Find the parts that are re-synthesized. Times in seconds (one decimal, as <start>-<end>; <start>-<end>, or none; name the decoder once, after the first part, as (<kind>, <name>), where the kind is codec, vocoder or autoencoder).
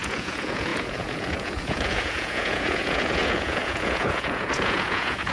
0.0-5.3 (vocoder, Vocos)